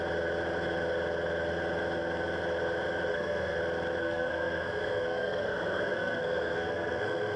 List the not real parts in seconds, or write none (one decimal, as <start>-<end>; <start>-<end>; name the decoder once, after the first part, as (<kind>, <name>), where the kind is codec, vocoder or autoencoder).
3.1-3.6 (codec, SNAC); 4.0-7.4